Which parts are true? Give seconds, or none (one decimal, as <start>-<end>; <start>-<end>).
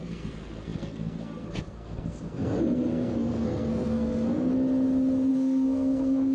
4.5-5.3